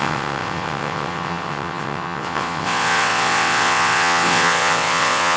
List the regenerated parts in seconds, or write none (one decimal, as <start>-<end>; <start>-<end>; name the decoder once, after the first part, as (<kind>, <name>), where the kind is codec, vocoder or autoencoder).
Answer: 0.0-5.4 (vocoder, WaveNeXt)